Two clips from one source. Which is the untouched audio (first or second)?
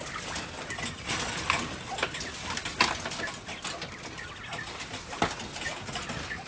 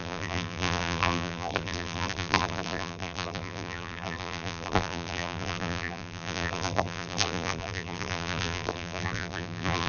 first